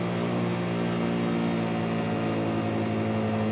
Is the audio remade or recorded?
recorded